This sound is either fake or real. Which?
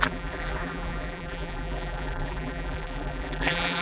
fake